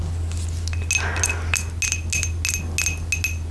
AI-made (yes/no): no